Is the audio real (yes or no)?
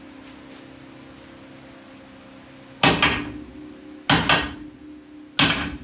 yes